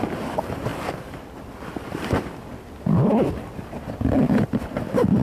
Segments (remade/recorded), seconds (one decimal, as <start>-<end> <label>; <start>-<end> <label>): 0.0-5.2 recorded

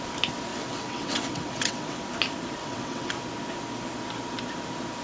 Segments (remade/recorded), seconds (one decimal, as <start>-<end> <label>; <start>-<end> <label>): 0.0-0.5 recorded; 0.5-2.0 remade; 2.0-2.6 recorded; 2.6-3.1 remade; 3.1-5.0 recorded

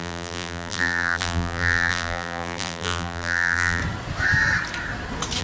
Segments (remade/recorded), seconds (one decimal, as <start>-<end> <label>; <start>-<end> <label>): 0.0-3.8 remade; 3.8-5.4 recorded

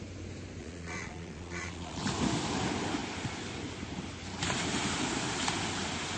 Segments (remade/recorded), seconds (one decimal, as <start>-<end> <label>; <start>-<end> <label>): 0.0-0.6 recorded; 0.6-2.0 remade; 2.0-6.2 recorded

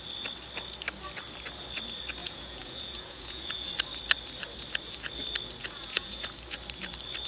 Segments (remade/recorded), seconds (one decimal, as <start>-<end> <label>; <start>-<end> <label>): 0.0-2.2 recorded; 2.2-3.7 remade; 3.7-5.6 recorded; 5.6-6.3 remade; 6.3-7.3 recorded

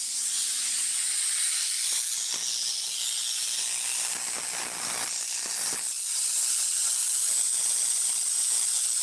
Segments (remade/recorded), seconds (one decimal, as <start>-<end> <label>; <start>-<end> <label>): 0.0-1.0 remade; 1.0-9.0 recorded

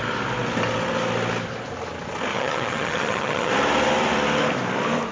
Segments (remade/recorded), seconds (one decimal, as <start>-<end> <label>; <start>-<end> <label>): 0.0-2.3 recorded; 2.3-3.5 remade; 3.5-5.1 recorded

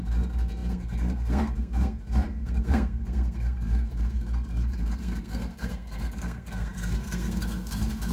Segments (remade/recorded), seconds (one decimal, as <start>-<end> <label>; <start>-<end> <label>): 0.0-8.1 remade